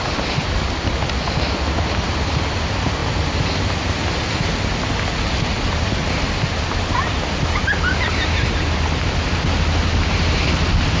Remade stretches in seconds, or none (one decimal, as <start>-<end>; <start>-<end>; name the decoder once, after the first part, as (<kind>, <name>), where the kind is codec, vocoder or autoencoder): none